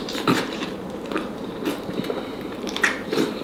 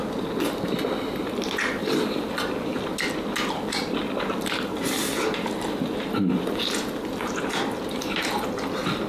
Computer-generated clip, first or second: first